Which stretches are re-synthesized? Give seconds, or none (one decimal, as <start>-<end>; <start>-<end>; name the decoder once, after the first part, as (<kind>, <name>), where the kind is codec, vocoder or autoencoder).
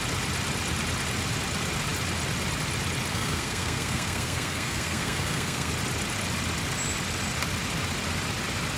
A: 3.1-5.7 (codec, SNAC)